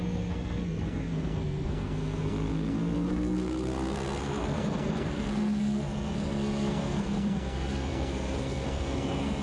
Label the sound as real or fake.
fake